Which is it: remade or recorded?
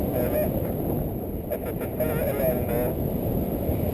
recorded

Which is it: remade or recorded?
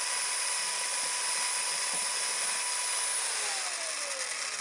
recorded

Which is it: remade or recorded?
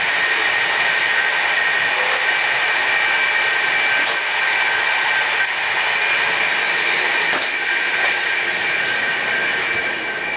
recorded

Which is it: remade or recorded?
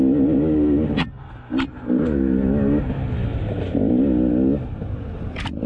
recorded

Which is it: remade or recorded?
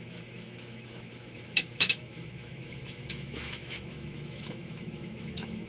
remade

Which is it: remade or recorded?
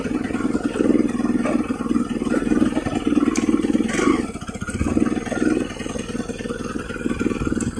recorded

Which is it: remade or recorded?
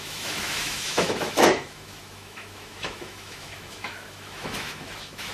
remade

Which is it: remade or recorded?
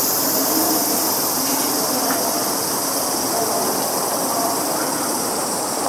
recorded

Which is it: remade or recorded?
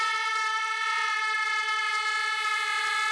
recorded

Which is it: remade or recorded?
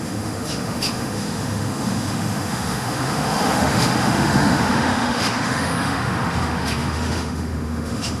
remade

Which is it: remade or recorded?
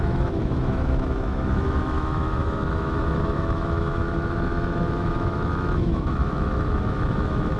remade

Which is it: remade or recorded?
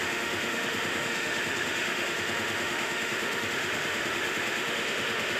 remade